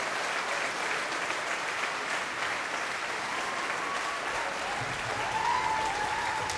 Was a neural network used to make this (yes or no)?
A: no